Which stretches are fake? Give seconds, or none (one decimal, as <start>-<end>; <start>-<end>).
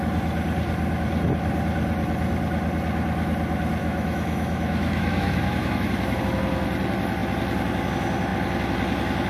3.8-6.2